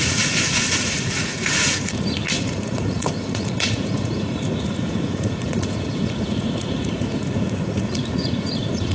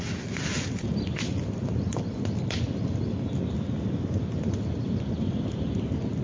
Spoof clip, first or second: first